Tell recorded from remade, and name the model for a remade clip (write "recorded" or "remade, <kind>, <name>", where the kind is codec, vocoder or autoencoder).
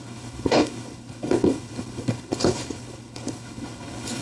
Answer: remade, codec, HILCodec